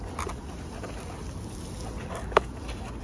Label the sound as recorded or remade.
recorded